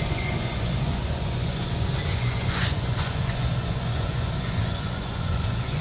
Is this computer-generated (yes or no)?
yes